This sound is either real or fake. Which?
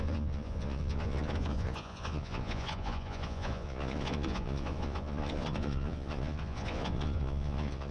fake